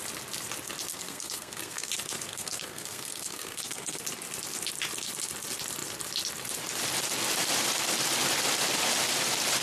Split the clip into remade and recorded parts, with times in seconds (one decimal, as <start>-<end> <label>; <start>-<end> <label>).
0.0-0.9 recorded; 0.9-1.9 remade; 1.9-2.3 recorded; 2.3-4.0 remade; 4.0-9.6 recorded

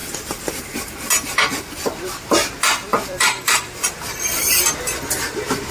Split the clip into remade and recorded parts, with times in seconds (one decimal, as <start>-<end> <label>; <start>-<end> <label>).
0.0-2.9 recorded; 2.9-4.6 remade; 4.6-5.7 recorded

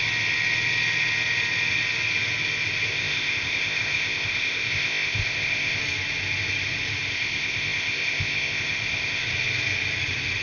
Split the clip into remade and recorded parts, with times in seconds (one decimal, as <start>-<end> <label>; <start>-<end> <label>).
0.0-2.9 recorded; 2.9-5.8 remade; 5.8-7.1 recorded; 7.1-9.2 remade; 9.2-10.4 recorded

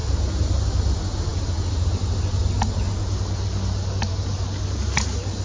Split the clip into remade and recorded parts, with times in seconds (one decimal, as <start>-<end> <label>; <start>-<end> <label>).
0.0-5.4 recorded

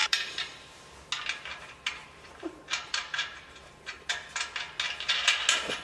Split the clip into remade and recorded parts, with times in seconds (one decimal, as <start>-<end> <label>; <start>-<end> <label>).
0.0-0.8 remade; 0.8-1.5 recorded; 1.5-4.1 remade; 4.1-5.8 recorded

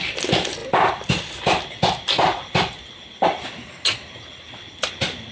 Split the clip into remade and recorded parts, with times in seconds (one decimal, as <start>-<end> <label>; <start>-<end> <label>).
0.0-5.3 recorded

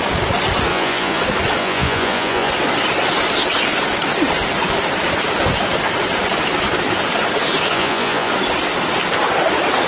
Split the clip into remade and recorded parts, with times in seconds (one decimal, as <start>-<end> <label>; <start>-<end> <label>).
0.0-0.7 recorded; 0.7-1.2 remade; 1.2-1.6 recorded; 1.6-2.5 remade; 2.5-7.7 recorded; 7.7-8.3 remade; 8.3-9.9 recorded